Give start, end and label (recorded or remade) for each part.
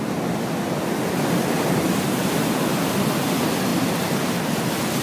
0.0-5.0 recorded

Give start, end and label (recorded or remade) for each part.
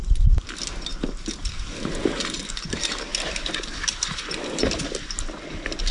0.0-5.9 recorded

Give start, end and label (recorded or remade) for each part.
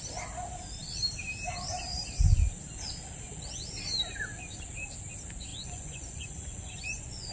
0.0-5.5 recorded; 5.5-7.3 remade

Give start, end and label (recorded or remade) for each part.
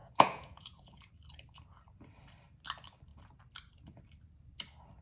0.0-1.1 remade; 1.1-5.0 recorded